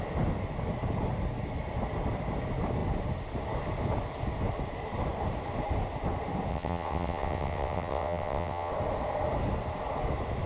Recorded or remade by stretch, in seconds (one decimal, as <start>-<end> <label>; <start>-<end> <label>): 0.0-6.5 recorded; 6.5-8.7 remade; 8.7-10.5 recorded